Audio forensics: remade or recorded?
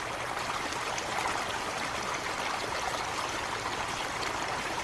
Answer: recorded